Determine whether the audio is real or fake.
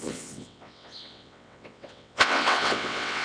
fake